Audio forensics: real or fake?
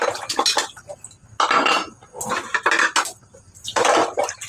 real